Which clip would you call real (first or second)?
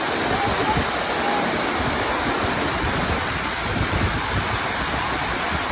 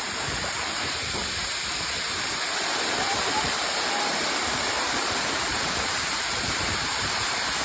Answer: first